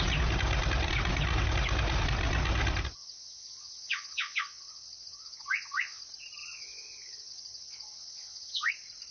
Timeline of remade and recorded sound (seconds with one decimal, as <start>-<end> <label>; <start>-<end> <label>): 0.0-3.0 recorded; 3.0-6.0 remade; 6.0-6.4 recorded; 6.4-8.7 remade; 8.7-9.1 recorded